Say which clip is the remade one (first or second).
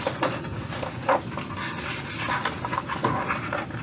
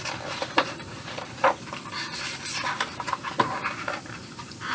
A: second